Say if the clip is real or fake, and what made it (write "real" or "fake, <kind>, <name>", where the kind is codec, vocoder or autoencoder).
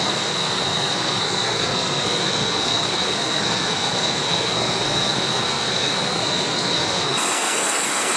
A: fake, codec, SNAC